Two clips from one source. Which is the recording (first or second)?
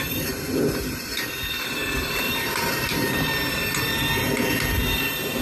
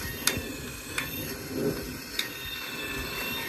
second